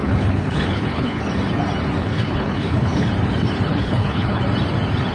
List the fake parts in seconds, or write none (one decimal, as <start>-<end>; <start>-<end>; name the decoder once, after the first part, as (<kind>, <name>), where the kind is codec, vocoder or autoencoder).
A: 0.0-1.2 (codec, HILCodec); 2.0-3.1; 3.7-4.4